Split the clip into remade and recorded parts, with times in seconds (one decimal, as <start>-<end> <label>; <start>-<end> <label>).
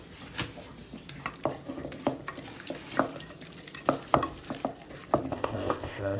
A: 0.0-5.3 recorded; 5.3-6.2 remade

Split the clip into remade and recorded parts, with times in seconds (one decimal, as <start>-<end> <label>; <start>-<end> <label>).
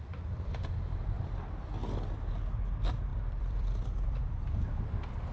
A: 0.0-3.1 recorded; 3.1-4.2 remade; 4.2-5.3 recorded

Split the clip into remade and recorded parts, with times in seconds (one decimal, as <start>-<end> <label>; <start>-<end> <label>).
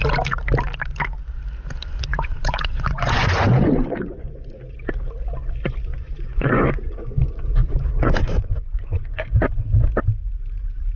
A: 0.0-2.1 recorded; 2.1-4.4 remade; 4.4-5.9 recorded; 5.9-9.4 remade; 9.4-11.0 recorded